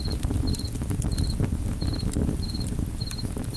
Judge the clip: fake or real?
real